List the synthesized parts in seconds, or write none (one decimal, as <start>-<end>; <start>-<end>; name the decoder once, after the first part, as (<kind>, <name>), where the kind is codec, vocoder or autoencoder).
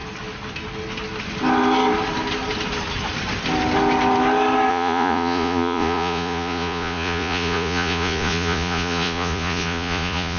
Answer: 4.7-10.4 (vocoder, Vocos)